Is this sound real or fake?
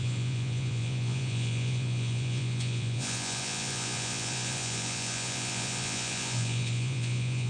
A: fake